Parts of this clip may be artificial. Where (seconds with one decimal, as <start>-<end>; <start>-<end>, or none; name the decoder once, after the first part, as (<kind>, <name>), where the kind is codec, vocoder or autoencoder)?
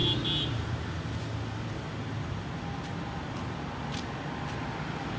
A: none